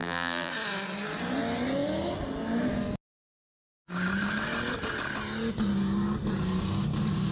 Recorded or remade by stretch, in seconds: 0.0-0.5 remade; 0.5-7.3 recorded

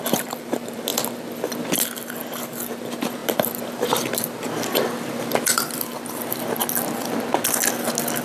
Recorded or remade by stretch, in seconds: 0.0-0.9 remade; 0.9-2.4 recorded; 2.4-6.6 remade; 6.6-8.2 recorded

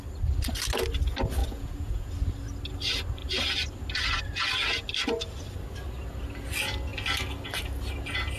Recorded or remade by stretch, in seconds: 0.0-1.4 recorded; 1.4-2.1 remade; 2.1-8.4 recorded

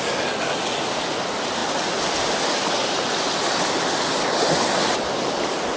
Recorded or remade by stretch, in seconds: 0.0-5.8 recorded

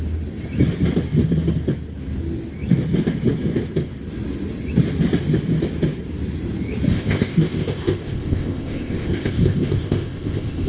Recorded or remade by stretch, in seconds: 0.0-6.9 recorded; 6.9-10.7 remade